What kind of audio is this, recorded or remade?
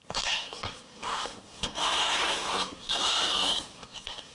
remade